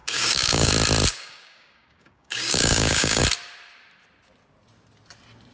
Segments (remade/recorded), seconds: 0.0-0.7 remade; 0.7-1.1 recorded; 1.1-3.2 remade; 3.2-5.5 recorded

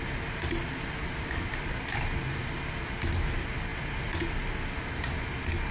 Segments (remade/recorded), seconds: 0.0-5.7 recorded

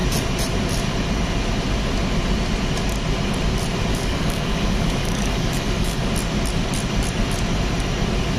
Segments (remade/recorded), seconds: 0.0-3.9 recorded; 3.9-6.1 remade; 6.1-8.4 recorded

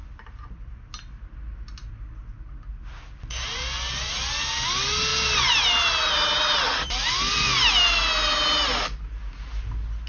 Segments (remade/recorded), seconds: 0.0-10.1 recorded

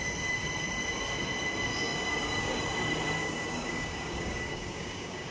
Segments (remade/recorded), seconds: 0.0-1.9 recorded; 1.9-2.6 remade; 2.6-3.2 recorded; 3.2-5.3 remade

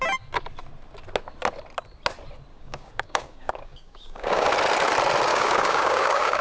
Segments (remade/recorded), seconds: 0.0-2.5 recorded; 2.5-4.5 remade; 4.5-5.3 recorded; 5.3-6.4 remade

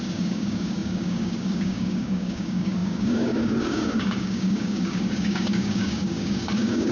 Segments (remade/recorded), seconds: 0.0-6.9 remade

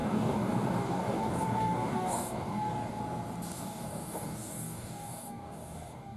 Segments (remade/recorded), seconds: 0.0-3.0 remade; 3.0-3.6 recorded; 3.6-6.2 remade